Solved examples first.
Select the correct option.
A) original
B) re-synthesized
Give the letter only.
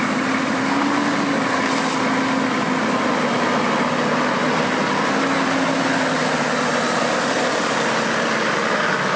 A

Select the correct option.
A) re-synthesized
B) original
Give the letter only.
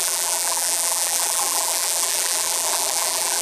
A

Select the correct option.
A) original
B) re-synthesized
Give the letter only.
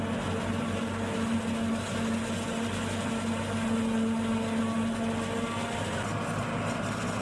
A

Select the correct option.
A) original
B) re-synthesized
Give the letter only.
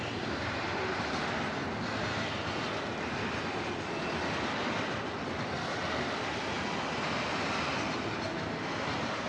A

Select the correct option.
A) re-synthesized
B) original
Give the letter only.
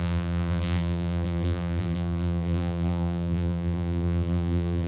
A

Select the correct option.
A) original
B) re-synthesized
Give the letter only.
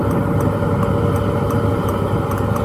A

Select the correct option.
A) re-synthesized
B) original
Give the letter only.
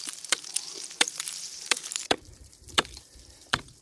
A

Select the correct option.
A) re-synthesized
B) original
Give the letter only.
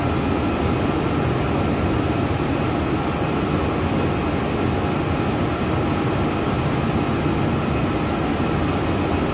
B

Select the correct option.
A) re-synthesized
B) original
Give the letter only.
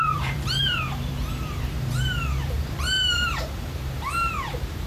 A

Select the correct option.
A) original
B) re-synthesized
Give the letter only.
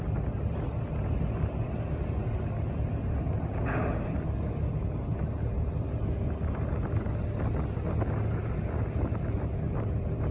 A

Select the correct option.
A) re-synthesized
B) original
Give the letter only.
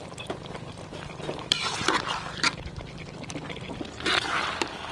A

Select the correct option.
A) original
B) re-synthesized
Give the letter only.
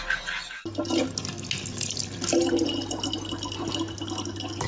A